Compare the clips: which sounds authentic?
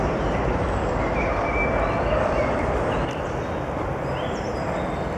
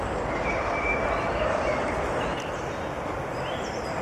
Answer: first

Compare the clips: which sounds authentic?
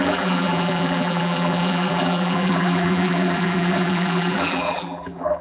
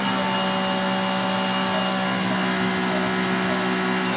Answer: second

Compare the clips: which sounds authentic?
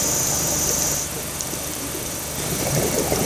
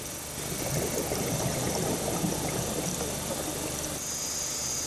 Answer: second